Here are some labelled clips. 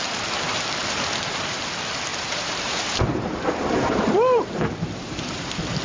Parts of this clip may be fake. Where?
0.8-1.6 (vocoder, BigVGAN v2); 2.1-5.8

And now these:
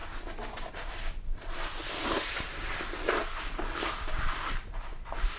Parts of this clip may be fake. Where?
none

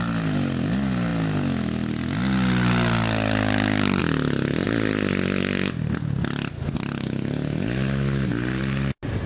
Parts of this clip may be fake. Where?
none

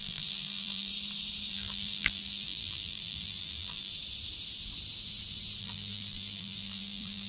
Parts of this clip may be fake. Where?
0.0-0.9 (vocoder, BigVGAN v2); 1.5-3.9; 5.6-7.3